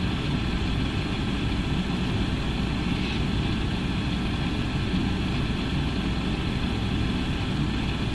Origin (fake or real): real